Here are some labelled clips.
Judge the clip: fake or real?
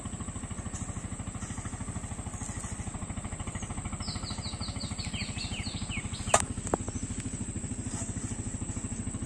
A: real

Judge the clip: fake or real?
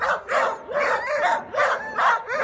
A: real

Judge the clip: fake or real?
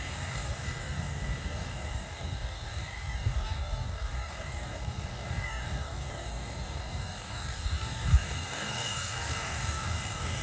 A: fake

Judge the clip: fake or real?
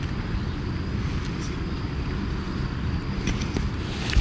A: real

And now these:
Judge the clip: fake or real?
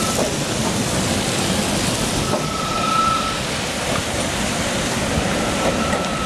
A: fake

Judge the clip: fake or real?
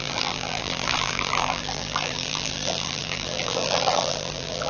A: fake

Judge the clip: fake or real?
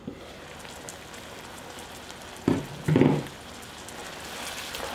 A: real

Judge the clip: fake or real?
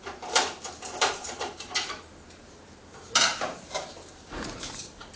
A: fake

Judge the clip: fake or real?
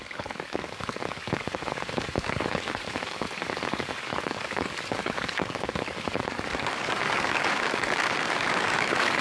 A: fake